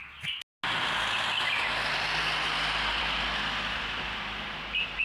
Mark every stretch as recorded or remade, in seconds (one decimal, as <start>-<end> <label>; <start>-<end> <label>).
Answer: 0.0-5.0 recorded